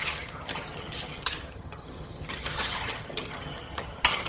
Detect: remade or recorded remade